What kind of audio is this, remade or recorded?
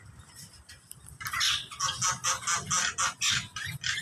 recorded